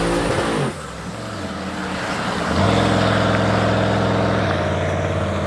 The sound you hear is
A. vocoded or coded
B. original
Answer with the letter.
B